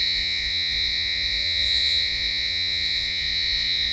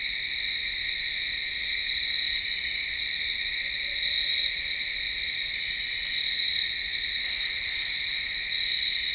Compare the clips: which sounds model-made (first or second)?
first